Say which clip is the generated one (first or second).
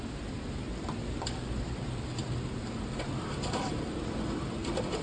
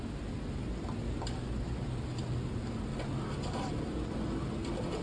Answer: first